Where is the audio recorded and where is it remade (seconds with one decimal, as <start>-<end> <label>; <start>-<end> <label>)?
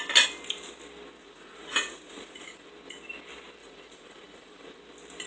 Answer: 0.0-1.2 recorded; 1.2-2.7 remade; 2.7-3.6 recorded; 3.6-4.8 remade; 4.8-5.3 recorded